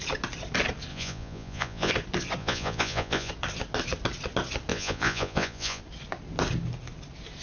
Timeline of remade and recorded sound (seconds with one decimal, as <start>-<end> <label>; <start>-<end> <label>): 0.0-0.9 recorded; 0.9-1.9 remade; 1.9-2.4 recorded; 2.4-3.3 remade; 3.3-4.7 recorded; 4.7-5.8 remade; 5.8-7.4 recorded